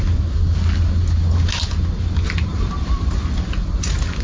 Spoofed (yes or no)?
no